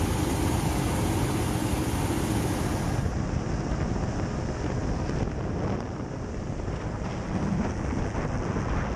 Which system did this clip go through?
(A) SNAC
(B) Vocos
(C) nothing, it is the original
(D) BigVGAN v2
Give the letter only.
C